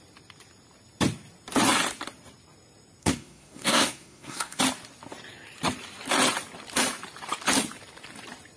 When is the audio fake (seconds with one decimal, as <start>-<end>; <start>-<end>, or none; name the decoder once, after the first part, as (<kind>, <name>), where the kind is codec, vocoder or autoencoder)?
3.0-4.6 (codec, SNAC)